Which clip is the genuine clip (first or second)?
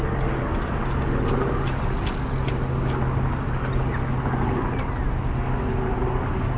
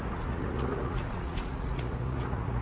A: first